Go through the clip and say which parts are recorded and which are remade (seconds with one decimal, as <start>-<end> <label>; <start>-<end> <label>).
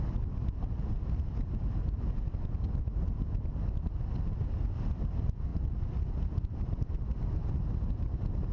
0.0-8.5 recorded